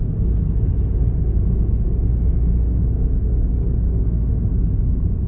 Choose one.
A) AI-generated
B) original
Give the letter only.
B